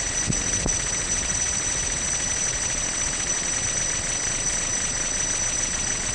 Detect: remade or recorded remade